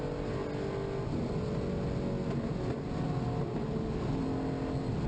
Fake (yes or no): no